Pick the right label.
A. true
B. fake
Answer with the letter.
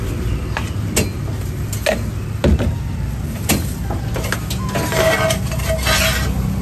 A